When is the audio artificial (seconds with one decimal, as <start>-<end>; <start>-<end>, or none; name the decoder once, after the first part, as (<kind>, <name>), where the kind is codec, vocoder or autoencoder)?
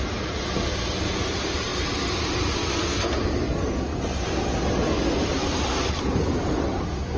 1.7-3.2 (vocoder, BigVGAN v2); 5.4-6.0